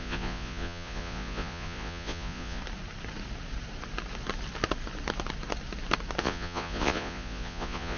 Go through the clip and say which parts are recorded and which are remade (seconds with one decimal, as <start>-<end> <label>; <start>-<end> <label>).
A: 0.0-2.6 remade; 2.6-6.2 recorded; 6.2-8.0 remade